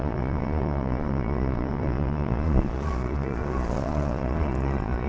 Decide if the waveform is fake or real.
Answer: fake